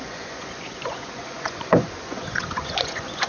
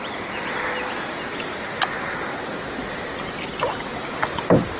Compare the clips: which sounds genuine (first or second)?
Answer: second